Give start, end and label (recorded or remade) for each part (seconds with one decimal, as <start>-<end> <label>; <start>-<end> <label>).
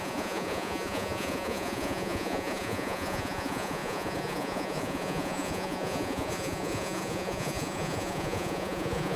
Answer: 0.0-9.2 remade